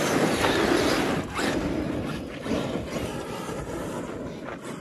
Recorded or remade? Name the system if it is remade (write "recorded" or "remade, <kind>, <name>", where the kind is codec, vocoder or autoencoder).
recorded